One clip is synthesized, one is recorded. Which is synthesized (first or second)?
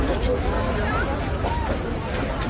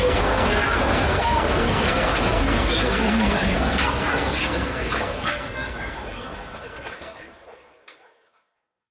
second